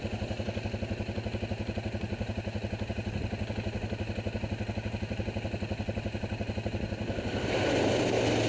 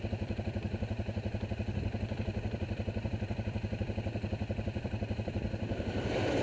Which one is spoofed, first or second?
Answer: second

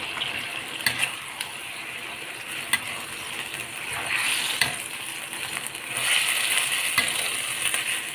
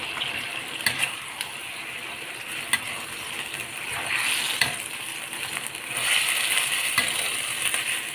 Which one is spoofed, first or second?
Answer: second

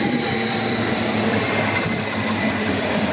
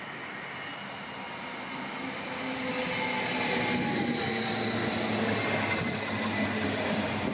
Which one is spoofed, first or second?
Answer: first